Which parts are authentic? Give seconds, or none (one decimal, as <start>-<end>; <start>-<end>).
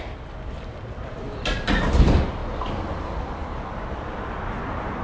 2.4-5.0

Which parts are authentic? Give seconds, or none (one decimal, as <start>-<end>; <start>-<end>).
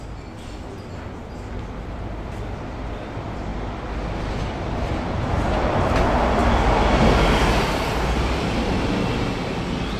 0.0-10.0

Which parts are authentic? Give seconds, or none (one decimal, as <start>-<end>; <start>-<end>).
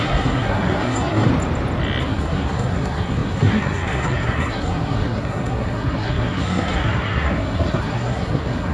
1.3-2.0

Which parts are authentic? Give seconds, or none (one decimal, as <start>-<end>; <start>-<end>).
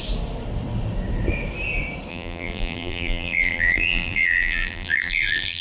0.0-2.1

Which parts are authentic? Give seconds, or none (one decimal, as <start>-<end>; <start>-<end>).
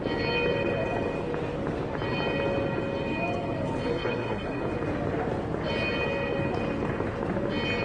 0.0-3.9; 4.6-7.8